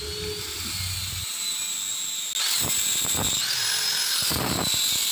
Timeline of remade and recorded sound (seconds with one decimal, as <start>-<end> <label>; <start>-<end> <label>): 0.0-5.1 recorded